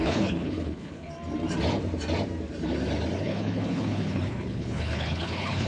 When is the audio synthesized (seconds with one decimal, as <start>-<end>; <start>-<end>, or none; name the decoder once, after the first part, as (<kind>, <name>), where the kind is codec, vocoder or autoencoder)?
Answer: 0.0-1.1 (codec, HILCodec); 3.2-5.7